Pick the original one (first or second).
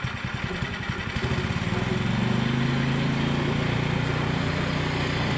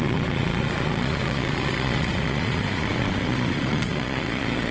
first